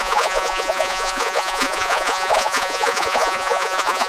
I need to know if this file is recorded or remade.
remade